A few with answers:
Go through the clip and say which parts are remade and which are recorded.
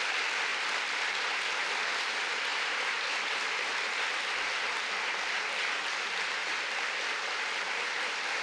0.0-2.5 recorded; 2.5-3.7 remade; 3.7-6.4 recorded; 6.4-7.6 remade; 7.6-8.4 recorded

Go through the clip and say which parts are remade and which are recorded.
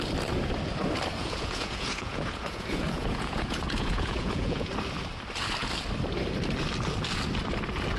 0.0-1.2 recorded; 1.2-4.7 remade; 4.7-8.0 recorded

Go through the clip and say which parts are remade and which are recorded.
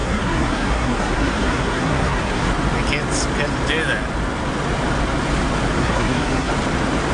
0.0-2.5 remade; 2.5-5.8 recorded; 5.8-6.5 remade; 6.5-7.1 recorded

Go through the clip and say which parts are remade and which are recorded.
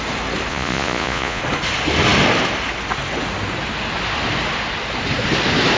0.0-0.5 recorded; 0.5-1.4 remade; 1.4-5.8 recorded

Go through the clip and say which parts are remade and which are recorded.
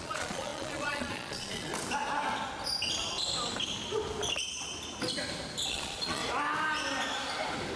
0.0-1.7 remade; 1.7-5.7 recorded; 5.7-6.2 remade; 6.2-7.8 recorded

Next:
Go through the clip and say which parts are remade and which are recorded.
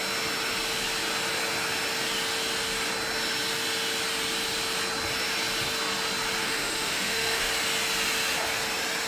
0.0-6.4 recorded; 6.4-7.5 remade; 7.5-9.1 recorded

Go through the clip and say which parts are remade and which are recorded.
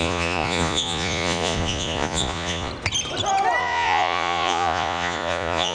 0.0-2.7 remade; 2.7-3.6 recorded; 3.6-5.7 remade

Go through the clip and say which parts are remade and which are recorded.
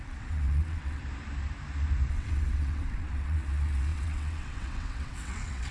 0.0-1.0 remade; 1.0-2.1 recorded; 2.1-5.7 remade